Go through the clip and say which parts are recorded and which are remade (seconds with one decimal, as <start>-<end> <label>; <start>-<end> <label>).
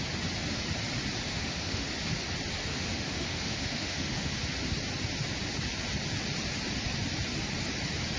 0.0-1.3 recorded; 1.3-1.9 remade; 1.9-2.6 recorded; 2.6-4.3 remade; 4.3-8.2 recorded